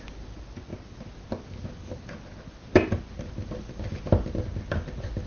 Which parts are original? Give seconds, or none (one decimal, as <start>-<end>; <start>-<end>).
0.0-5.3